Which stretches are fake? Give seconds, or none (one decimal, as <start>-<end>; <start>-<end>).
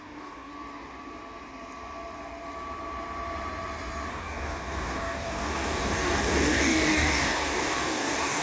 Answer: 0.0-0.5; 4.1-8.4